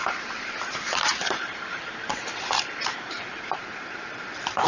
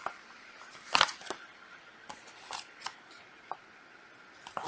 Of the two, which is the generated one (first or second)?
first